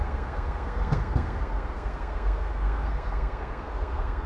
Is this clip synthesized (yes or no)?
yes